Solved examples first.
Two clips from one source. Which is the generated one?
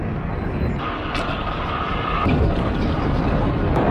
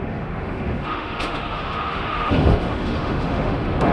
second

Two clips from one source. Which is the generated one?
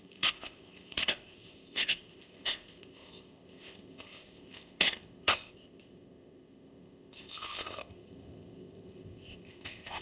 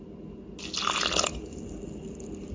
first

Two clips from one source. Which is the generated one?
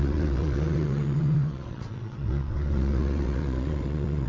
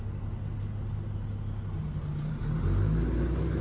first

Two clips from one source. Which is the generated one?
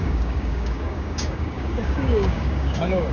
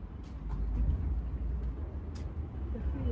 first